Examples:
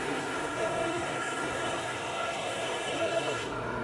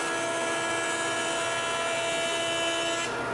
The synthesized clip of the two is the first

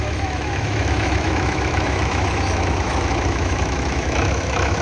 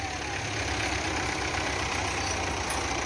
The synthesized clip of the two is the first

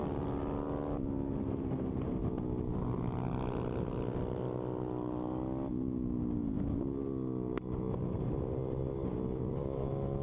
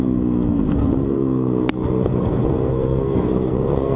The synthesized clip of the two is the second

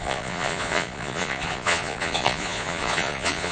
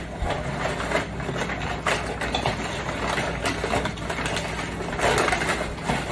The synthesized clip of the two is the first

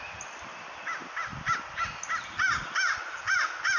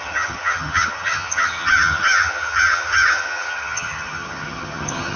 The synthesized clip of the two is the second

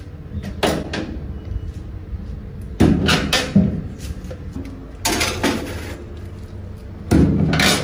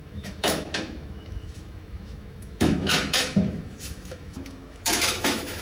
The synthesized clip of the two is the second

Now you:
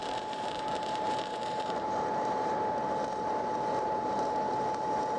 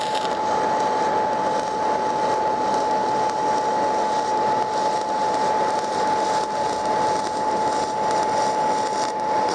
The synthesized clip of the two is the first